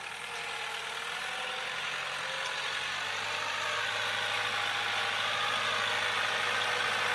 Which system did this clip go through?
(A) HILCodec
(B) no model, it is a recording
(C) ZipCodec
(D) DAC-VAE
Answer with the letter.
B